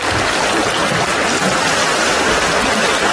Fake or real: real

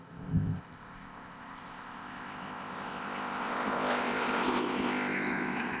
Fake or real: fake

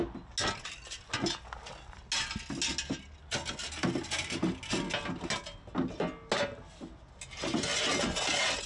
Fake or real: real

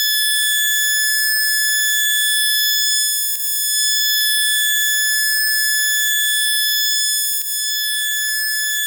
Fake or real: real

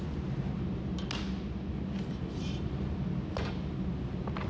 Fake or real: real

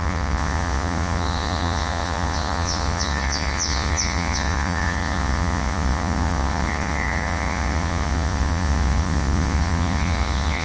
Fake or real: fake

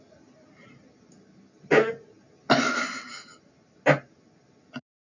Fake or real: real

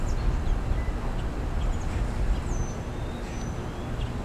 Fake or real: real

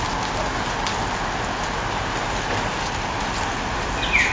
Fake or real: real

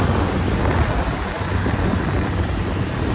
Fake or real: real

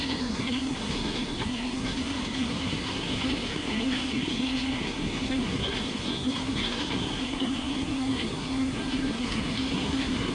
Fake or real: fake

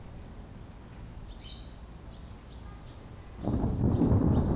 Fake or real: real